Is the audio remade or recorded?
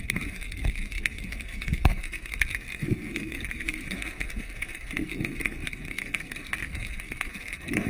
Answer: remade